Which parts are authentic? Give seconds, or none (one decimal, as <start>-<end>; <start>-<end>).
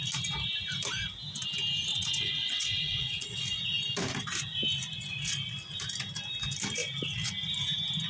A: 0.0-1.9; 3.4-8.1